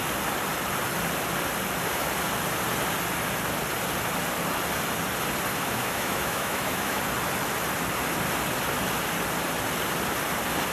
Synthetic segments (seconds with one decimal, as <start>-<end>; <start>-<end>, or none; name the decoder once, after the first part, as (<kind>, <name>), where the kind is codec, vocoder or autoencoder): 5.5-7.0 (autoencoder, DAC-VAE)